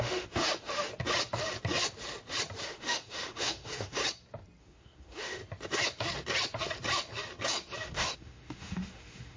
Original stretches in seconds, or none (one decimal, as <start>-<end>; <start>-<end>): 0.9-2.6; 4.0-4.6; 5.4-7.9